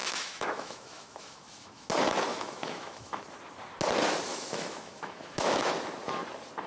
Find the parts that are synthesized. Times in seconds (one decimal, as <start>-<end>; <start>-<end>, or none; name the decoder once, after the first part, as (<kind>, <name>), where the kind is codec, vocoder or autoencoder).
0.0-1.9 (autoencoder, DAC-VAE); 2.3-3.2; 4.3-5.7